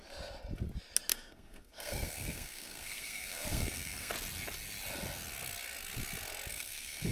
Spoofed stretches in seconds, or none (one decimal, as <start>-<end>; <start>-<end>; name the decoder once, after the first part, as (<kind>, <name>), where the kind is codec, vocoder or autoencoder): 1.1-4.1 (codec, SNAC); 6.5-7.1